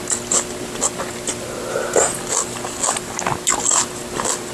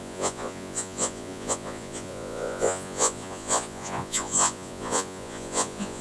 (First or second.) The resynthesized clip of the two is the second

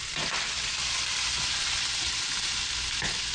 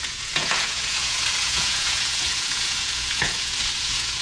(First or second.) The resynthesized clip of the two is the second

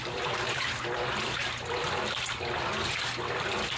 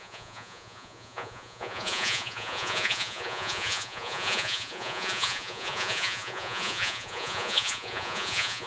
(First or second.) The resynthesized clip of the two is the second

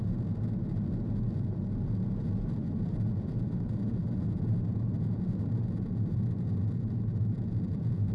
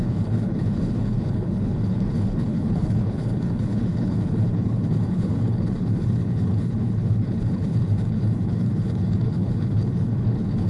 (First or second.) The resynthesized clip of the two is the second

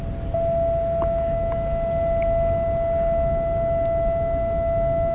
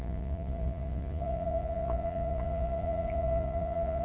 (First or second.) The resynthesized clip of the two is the second